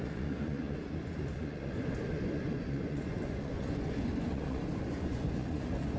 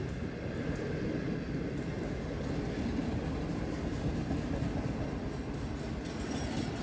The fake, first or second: first